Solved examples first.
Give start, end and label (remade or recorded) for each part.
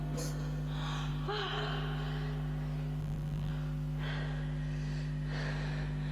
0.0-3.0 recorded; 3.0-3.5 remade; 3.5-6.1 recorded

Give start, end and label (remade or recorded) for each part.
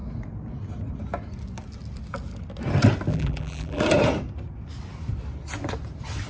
0.0-3.1 recorded; 3.1-3.8 remade; 3.8-6.3 recorded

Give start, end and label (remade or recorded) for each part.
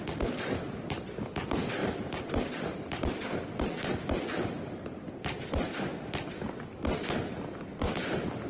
0.0-1.8 recorded; 1.8-5.8 remade; 5.8-8.5 recorded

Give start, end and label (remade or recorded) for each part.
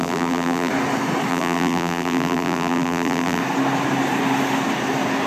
0.0-0.7 remade; 0.7-1.3 recorded; 1.3-3.4 remade; 3.4-5.3 recorded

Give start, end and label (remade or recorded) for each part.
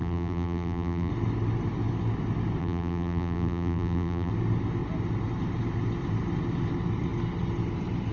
0.0-1.1 remade; 1.1-2.6 recorded; 2.6-4.3 remade; 4.3-8.1 recorded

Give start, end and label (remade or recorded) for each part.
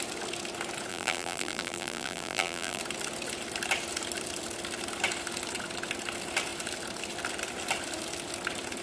0.0-0.9 recorded; 0.9-2.8 remade; 2.8-8.8 recorded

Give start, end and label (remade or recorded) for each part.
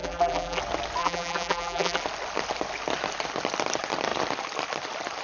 0.0-0.6 remade; 0.6-1.0 recorded; 1.0-2.0 remade; 2.0-5.2 recorded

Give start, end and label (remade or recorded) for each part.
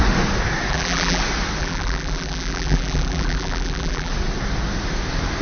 0.0-0.7 recorded; 0.7-1.2 remade; 1.2-1.6 recorded; 1.6-4.1 remade; 4.1-5.4 recorded